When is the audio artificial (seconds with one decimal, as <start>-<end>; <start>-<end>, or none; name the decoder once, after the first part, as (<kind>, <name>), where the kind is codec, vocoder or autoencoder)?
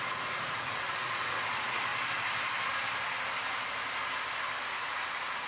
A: 0.0-1.9 (vocoder, Vocos); 4.6-5.5